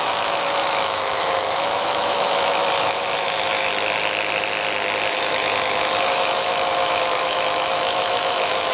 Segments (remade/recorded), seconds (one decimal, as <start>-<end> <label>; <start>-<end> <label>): 0.0-3.7 remade; 3.7-5.1 recorded; 5.1-8.7 remade